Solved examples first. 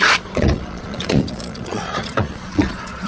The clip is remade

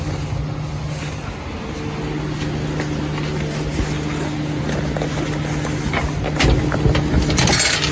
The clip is recorded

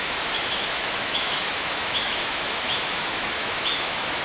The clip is remade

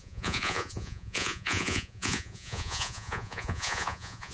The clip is remade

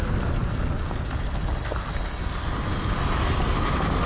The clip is recorded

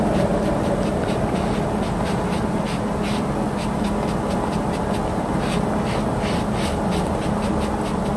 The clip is recorded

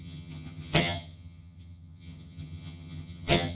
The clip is remade